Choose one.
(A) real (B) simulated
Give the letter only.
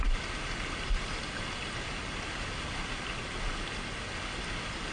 A